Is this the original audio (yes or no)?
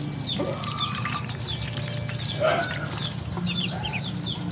yes